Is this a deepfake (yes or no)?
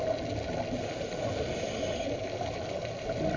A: no